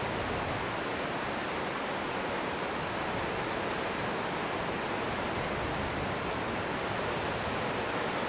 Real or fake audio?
real